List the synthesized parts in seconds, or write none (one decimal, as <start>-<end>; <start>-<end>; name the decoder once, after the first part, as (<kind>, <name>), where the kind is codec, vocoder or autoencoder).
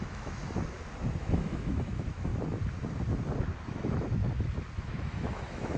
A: 0.0-0.4 (autoencoder, DAC-VAE); 1.2-2.3; 3.6-4.2; 4.8-5.8